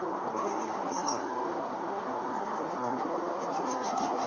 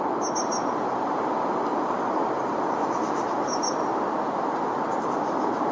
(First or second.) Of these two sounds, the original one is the second